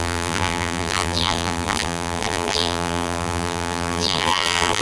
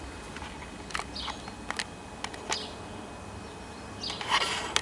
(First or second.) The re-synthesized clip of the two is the first